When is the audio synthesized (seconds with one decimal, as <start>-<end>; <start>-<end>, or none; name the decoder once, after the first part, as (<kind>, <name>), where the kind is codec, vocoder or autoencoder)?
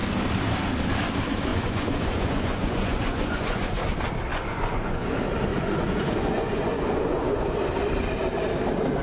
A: 1.5-3.8 (vocoder, Vocos); 4.3-5.1; 5.5-7.4